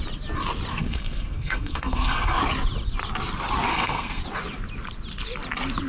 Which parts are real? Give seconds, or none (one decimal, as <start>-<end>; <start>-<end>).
0.0-0.7; 2.4-3.7; 4.2-5.9